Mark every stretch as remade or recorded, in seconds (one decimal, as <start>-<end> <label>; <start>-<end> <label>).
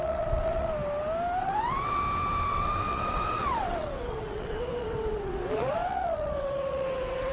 0.0-0.7 remade; 0.7-1.4 recorded; 1.4-2.0 remade; 2.0-2.5 recorded; 2.5-7.3 remade